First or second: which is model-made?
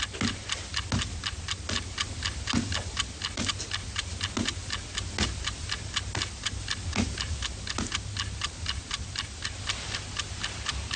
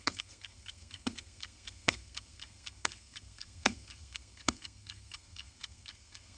second